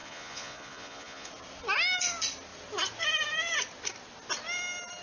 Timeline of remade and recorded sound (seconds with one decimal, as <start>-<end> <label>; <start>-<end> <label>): 0.0-1.3 remade; 1.3-5.0 recorded

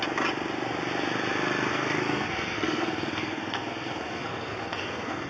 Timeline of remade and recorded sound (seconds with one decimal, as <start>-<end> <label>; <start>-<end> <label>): 0.0-1.7 recorded; 1.7-5.3 remade

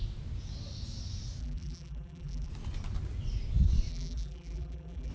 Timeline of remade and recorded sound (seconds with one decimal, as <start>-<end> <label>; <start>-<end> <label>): 0.0-1.4 recorded; 1.4-2.5 remade; 2.5-3.9 recorded; 3.9-5.1 remade

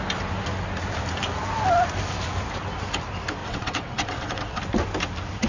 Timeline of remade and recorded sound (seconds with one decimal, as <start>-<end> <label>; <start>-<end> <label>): 0.0-3.4 recorded; 3.4-4.6 remade; 4.6-5.5 recorded